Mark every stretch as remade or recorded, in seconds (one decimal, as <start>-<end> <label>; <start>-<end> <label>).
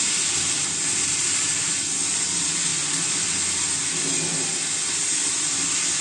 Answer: 0.0-0.9 recorded; 0.9-2.7 remade; 2.7-5.4 recorded; 5.4-6.0 remade